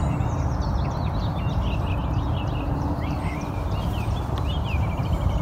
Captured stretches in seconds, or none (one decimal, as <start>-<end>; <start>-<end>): 0.0-2.0